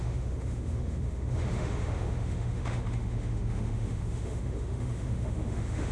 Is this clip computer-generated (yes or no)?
yes